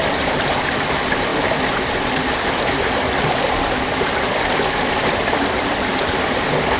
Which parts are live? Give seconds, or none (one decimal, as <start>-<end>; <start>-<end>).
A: 0.0-6.8